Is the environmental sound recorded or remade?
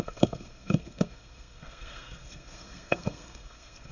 remade